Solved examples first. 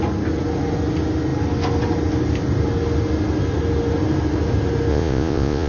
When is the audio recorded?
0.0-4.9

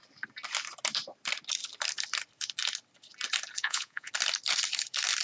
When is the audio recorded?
0.0-3.6; 4.1-5.2

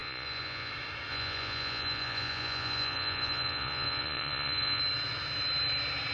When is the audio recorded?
0.7-1.1; 4.8-6.1

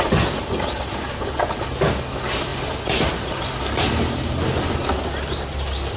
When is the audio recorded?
0.0-6.0

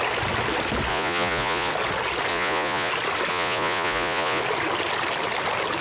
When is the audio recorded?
0.0-0.9; 1.7-2.3; 2.9-3.3; 4.4-5.8